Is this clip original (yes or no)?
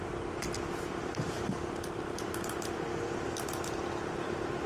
yes